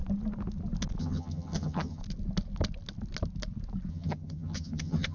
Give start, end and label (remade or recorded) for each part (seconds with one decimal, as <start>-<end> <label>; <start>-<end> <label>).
0.0-1.0 recorded; 1.0-2.0 remade; 2.0-3.9 recorded; 3.9-5.1 remade